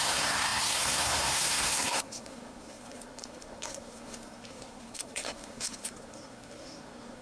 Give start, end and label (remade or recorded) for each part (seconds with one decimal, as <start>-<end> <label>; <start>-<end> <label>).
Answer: 0.0-7.2 remade